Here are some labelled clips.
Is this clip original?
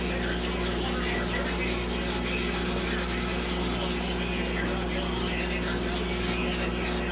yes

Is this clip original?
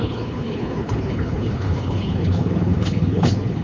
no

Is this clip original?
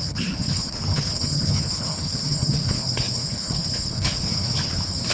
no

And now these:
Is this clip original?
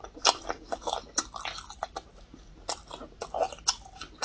yes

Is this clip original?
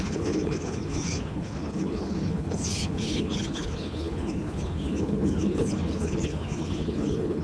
no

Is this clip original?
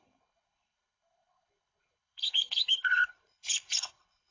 no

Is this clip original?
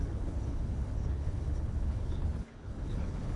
no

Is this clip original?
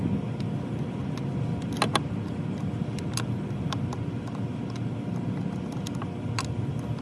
yes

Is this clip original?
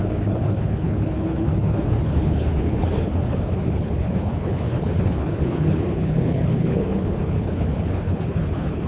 no